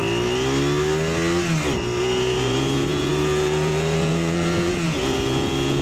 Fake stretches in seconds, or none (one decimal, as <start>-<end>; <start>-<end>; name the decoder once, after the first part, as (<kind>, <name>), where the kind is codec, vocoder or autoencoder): 2.0-5.8 (vocoder, Vocos)